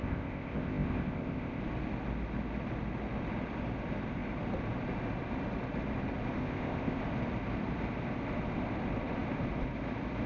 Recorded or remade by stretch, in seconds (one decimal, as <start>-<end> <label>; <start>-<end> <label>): 0.0-1.6 remade; 1.6-6.4 recorded; 6.4-7.0 remade; 7.0-10.3 recorded